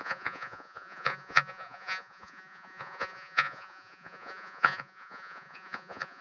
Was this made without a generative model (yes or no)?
no